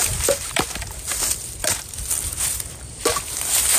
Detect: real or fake fake